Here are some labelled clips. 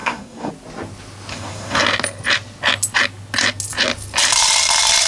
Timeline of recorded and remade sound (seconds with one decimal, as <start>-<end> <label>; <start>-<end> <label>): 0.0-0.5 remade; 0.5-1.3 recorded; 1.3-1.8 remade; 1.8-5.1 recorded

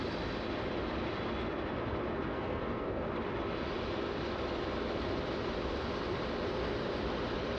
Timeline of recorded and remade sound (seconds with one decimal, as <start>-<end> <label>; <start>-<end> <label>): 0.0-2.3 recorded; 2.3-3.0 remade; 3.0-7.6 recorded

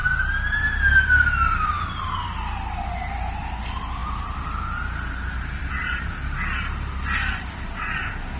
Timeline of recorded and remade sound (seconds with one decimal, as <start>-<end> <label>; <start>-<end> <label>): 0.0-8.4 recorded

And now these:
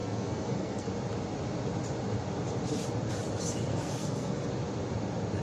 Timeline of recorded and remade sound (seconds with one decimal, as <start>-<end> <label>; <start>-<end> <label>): 0.0-0.9 remade; 0.9-3.7 recorded; 3.7-4.4 remade; 4.4-5.4 recorded